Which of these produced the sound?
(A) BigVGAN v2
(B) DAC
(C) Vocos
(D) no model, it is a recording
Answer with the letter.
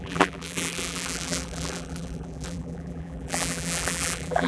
A